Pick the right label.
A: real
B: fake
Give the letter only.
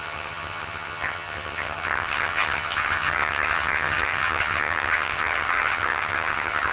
B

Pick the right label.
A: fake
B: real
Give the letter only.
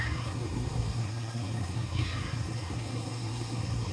A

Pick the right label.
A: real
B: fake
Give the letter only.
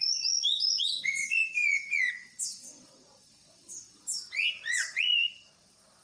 B